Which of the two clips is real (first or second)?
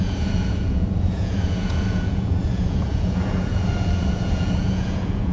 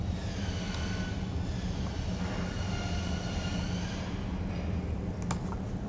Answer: second